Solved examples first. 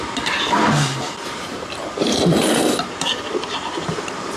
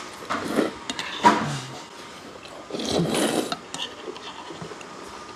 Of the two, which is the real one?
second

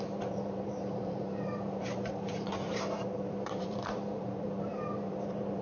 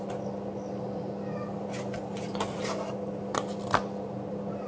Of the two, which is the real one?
second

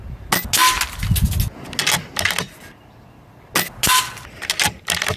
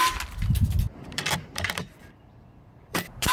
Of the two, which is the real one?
first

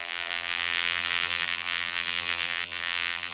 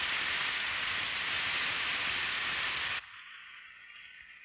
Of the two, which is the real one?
second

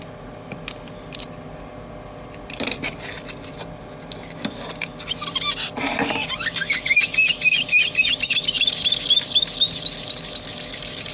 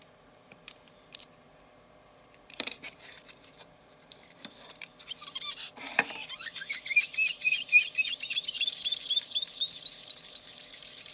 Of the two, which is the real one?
first